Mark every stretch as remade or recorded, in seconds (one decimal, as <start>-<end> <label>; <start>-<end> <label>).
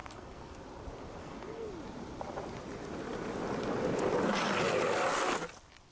0.0-0.6 remade; 0.6-1.2 recorded; 1.2-1.7 remade; 1.7-5.9 recorded